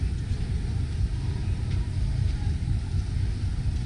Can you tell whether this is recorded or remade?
recorded